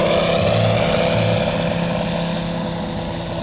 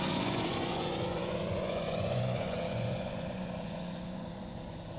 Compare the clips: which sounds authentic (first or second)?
first